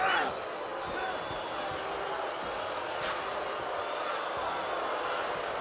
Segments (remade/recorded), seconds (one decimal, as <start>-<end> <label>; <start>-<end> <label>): 0.0-5.6 recorded